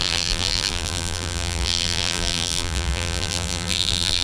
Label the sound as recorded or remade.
remade